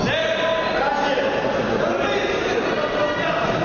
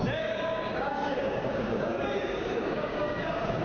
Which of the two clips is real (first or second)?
first